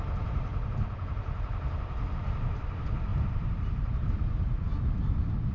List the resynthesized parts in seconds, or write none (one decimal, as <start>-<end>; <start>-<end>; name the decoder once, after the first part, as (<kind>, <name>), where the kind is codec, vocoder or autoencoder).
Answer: 0.0-0.5 (vocoder, BigVGAN v2); 2.2-4.7